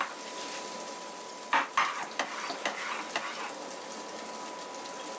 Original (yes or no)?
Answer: yes